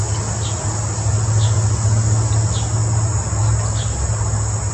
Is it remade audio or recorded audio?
recorded